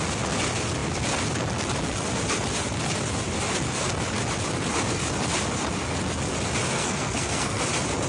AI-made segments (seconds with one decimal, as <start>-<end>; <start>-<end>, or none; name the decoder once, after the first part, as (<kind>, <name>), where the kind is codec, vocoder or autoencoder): 6.7-7.6 (codec, SNAC)